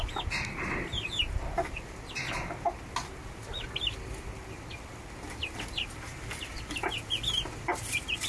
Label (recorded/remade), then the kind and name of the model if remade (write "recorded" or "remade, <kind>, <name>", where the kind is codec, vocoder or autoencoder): recorded